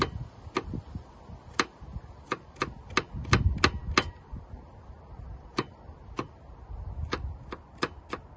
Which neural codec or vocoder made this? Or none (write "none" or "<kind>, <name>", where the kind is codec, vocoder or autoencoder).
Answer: none